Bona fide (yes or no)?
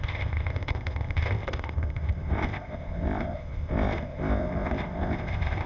no